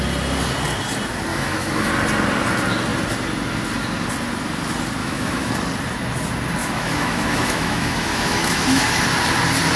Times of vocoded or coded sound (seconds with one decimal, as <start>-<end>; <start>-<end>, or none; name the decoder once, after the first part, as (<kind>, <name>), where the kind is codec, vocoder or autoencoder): 1.3-1.9 (autoencoder, DAC-VAE); 5.0-5.5; 6.6-9.0